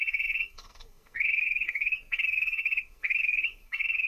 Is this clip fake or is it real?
fake